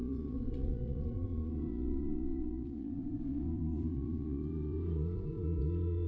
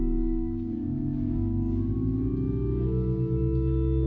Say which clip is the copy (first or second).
first